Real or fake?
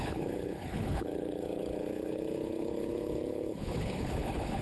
fake